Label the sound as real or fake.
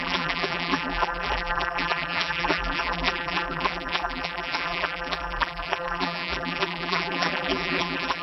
fake